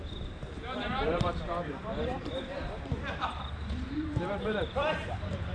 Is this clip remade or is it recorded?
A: remade